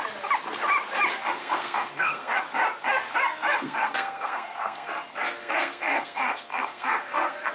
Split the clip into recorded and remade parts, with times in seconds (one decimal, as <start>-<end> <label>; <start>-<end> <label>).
0.0-1.4 recorded; 1.4-2.4 remade; 2.4-3.5 recorded; 3.5-4.9 remade; 4.9-5.4 recorded; 5.4-7.5 remade

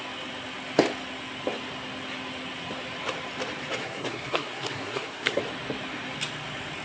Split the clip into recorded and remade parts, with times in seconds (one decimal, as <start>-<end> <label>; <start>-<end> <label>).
0.0-3.8 recorded; 3.8-5.4 remade; 5.4-6.8 recorded

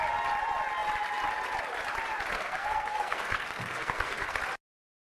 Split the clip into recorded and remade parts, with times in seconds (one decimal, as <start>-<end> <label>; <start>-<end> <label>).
0.0-2.3 recorded; 2.3-4.4 remade; 4.4-5.1 recorded

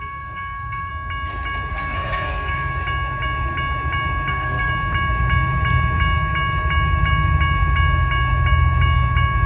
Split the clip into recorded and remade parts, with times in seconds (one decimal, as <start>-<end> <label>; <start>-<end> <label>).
0.0-0.9 remade; 0.9-1.7 recorded; 1.7-2.7 remade; 2.7-4.3 recorded; 4.3-4.7 remade; 4.7-9.5 recorded

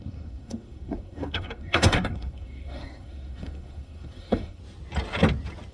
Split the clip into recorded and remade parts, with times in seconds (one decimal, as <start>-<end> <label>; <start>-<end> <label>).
0.0-4.6 remade; 4.6-5.7 recorded

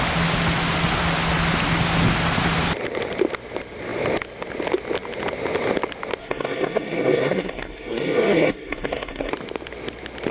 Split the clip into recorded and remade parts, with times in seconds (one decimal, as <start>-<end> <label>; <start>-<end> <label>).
0.0-6.2 recorded; 6.2-9.3 remade; 9.3-10.3 recorded

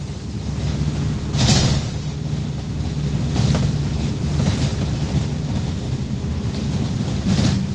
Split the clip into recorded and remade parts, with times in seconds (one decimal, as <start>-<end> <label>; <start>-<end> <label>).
0.0-7.7 recorded